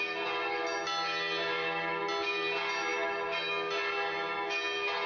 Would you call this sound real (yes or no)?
yes